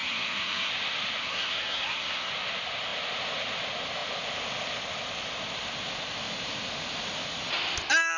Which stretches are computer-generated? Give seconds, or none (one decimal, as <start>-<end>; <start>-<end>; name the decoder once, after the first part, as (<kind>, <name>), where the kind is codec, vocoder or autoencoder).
0.0-0.7 (codec, SNAC); 1.2-2.3